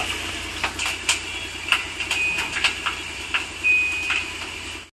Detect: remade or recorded recorded